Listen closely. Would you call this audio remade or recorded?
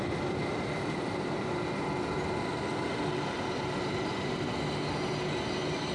recorded